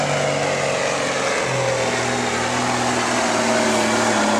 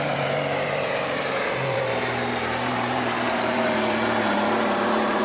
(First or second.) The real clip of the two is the first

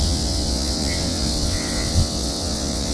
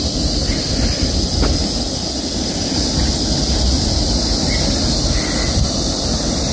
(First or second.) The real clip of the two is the second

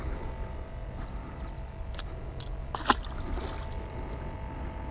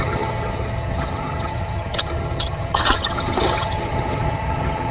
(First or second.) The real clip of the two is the first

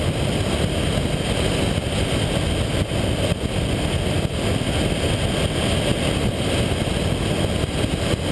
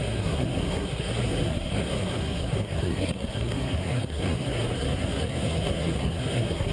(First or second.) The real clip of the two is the first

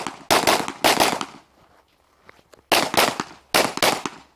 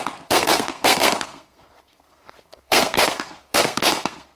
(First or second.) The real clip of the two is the first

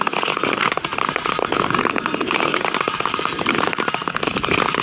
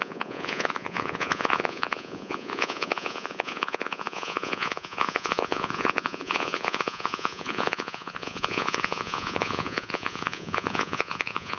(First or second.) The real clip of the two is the first